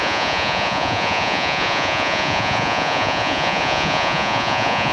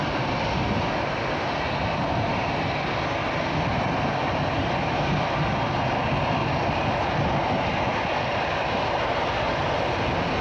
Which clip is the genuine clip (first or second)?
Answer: second